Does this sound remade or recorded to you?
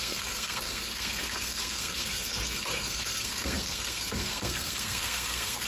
remade